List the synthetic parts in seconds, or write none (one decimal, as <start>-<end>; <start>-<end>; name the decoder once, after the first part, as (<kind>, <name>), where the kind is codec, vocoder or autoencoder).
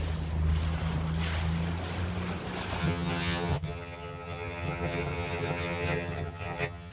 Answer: 2.8-6.9 (vocoder, HiFi-GAN)